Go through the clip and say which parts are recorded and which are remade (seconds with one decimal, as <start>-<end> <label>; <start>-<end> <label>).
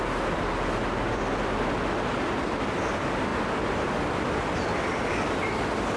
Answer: 0.0-6.0 recorded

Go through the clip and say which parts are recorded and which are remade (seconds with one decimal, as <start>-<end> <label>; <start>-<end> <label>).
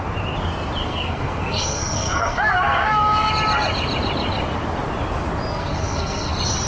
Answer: 0.0-0.8 recorded; 0.8-3.3 remade; 3.3-5.5 recorded; 5.5-6.3 remade; 6.3-6.7 recorded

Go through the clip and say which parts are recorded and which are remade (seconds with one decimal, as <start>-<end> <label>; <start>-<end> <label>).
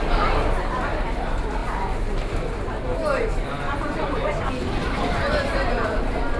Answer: 0.0-6.4 recorded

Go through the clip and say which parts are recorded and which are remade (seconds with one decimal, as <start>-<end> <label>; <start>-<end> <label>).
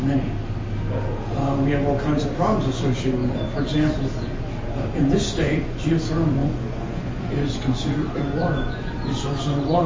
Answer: 0.0-5.0 recorded; 5.0-5.9 remade; 5.9-6.4 recorded; 6.4-9.9 remade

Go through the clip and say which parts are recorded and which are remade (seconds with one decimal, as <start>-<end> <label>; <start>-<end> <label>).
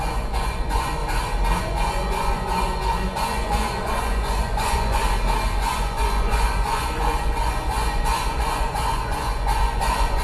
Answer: 0.0-1.0 remade; 1.0-1.6 recorded; 1.6-5.0 remade; 5.0-5.6 recorded; 5.6-10.2 remade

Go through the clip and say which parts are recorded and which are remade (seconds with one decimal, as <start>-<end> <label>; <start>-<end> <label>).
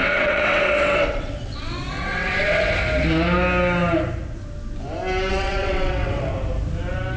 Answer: 0.0-2.8 remade; 2.8-5.3 recorded; 5.3-6.3 remade; 6.3-7.2 recorded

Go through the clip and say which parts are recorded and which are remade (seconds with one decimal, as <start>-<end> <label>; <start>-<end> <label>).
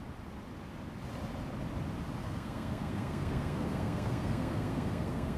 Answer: 0.0-2.2 recorded; 2.2-5.4 remade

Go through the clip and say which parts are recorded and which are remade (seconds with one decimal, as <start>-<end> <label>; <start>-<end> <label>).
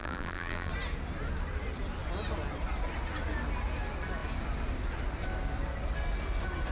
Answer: 0.0-0.7 remade; 0.7-6.7 recorded